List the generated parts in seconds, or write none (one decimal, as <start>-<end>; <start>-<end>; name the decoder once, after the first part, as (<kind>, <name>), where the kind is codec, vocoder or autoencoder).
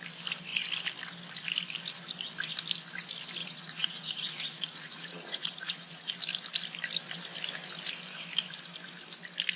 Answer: 3.4-6.1 (vocoder, Vocos)